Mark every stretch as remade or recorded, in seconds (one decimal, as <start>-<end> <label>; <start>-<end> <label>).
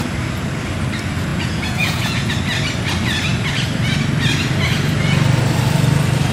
0.0-1.3 recorded; 1.3-2.3 remade; 2.3-6.3 recorded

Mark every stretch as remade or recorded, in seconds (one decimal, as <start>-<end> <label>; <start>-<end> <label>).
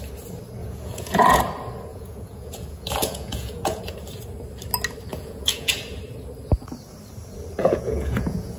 0.0-0.6 recorded; 0.6-1.4 remade; 1.4-1.9 recorded; 1.9-3.8 remade; 3.8-5.1 recorded; 5.1-5.7 remade; 5.7-7.6 recorded; 7.6-8.6 remade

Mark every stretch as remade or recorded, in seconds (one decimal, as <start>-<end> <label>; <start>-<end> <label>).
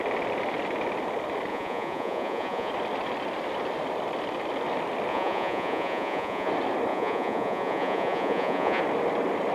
0.0-1.5 recorded; 1.5-2.7 remade; 2.7-5.1 recorded; 5.1-6.5 remade; 6.5-6.9 recorded; 6.9-8.8 remade; 8.8-9.5 recorded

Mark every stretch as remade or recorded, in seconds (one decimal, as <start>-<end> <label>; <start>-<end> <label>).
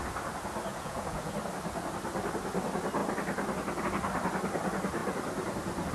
0.0-0.7 recorded; 0.7-1.3 remade; 1.3-5.9 recorded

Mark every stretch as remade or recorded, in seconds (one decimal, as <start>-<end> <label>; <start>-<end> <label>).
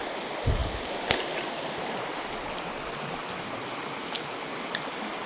0.0-5.3 recorded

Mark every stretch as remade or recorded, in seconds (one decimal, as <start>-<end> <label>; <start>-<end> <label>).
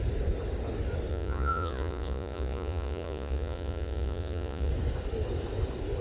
0.0-1.1 recorded; 1.1-4.7 remade; 4.7-6.0 recorded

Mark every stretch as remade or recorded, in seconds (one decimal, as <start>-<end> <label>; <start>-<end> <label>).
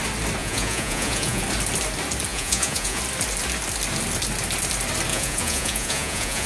0.0-0.4 recorded; 0.4-1.4 remade; 1.4-2.3 recorded; 2.3-3.0 remade; 3.0-5.1 recorded; 5.1-6.5 remade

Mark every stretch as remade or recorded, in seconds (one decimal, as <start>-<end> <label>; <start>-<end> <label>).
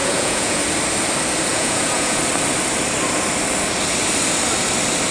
0.0-0.6 remade; 0.6-1.5 recorded; 1.5-2.2 remade; 2.2-5.1 recorded